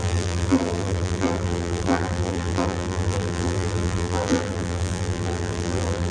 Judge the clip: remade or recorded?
remade